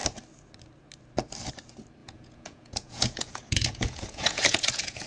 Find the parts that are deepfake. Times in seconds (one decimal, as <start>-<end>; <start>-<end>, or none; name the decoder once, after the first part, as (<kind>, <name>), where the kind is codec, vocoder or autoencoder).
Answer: 2.0-5.1 (vocoder, Vocos)